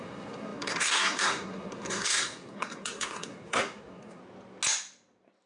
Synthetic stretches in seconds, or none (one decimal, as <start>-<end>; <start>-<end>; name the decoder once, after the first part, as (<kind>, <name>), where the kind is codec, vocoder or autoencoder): 0.0-4.2 (codec, SNAC)